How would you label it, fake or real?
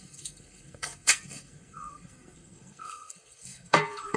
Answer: fake